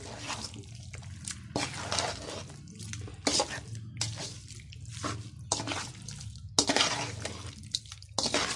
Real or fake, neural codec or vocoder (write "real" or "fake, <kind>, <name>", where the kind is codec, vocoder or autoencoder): real